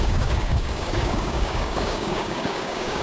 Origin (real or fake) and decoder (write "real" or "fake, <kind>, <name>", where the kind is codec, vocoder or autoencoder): fake, codec, DAC